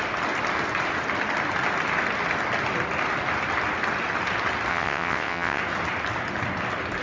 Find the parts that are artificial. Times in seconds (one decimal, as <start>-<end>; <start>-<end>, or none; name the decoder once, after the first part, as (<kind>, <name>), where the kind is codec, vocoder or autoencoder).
4.7-5.6 (vocoder, WaveNeXt)